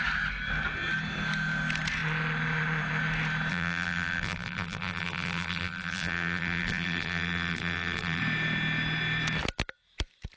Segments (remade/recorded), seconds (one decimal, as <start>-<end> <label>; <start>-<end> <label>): 0.0-3.5 recorded; 3.5-8.2 remade; 8.2-10.4 recorded